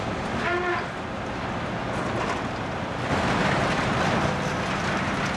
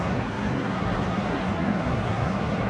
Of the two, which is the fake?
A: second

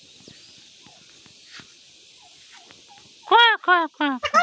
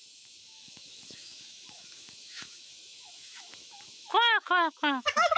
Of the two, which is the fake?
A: second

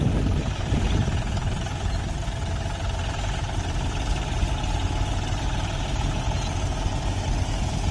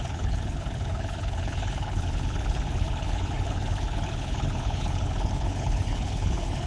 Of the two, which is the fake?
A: second